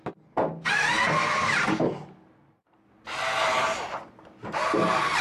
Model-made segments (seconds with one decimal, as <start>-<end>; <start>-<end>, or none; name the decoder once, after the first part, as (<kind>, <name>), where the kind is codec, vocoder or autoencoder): none